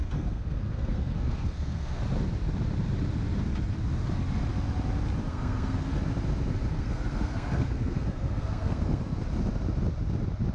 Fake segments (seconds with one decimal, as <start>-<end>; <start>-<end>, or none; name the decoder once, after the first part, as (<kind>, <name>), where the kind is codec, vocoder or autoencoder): 0.0-2.0 (codec, SNAC); 5.3-5.9; 6.7-9.2